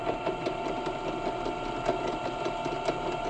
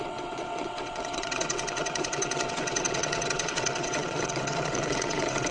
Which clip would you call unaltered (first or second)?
first